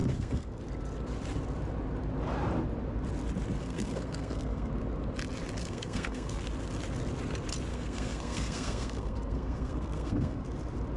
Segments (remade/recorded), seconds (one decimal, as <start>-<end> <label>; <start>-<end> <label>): 0.0-0.6 remade; 0.6-3.6 recorded; 3.6-4.7 remade; 4.7-5.6 recorded; 5.6-6.4 remade; 6.4-7.7 recorded; 7.7-10.4 remade; 10.4-11.0 recorded